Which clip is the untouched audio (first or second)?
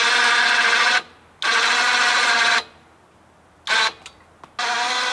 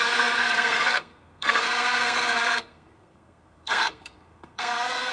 first